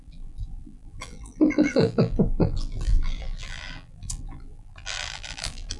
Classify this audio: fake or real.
fake